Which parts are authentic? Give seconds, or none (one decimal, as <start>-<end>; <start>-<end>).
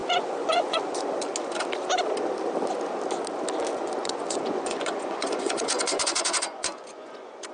0.8-3.8